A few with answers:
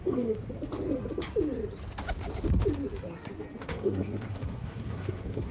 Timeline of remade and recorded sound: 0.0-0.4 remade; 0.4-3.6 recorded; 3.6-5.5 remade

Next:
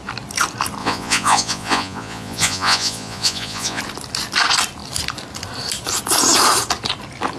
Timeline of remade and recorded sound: 0.0-0.8 recorded; 0.8-3.8 remade; 3.8-7.4 recorded

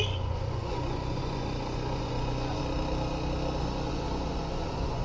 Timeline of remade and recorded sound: 0.0-2.6 remade; 2.6-3.6 recorded; 3.6-5.0 remade

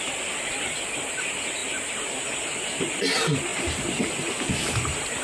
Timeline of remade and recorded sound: 0.0-5.2 recorded

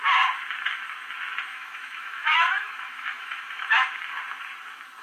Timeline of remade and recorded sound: 0.0-1.5 recorded; 1.5-4.0 remade; 4.0-5.0 recorded